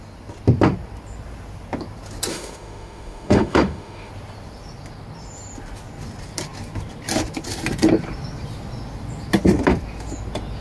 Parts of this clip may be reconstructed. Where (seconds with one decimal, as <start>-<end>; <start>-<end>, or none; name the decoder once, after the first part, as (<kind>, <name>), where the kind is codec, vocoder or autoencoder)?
2.3-4.1 (autoencoder, DAC-VAE)